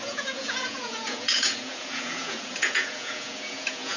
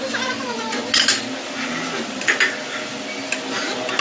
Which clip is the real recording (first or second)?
second